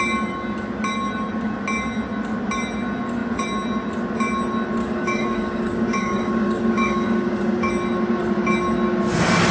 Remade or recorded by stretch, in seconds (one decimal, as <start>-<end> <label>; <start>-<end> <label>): 0.0-4.8 recorded; 4.8-7.7 remade; 7.7-9.5 recorded